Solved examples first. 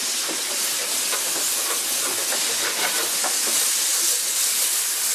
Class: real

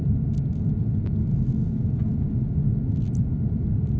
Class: real